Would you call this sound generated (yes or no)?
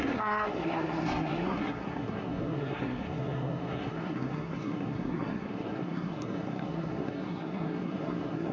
yes